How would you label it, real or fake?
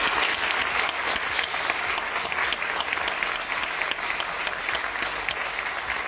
real